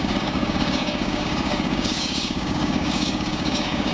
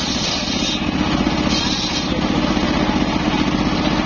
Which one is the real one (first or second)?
second